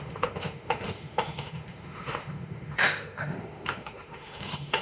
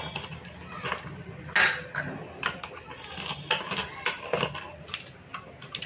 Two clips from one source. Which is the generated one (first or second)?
first